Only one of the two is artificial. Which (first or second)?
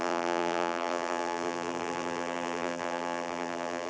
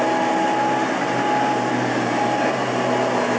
first